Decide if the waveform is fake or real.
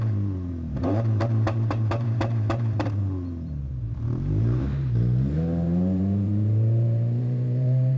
fake